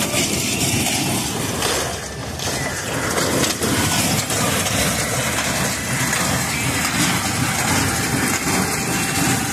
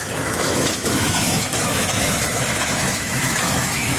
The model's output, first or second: second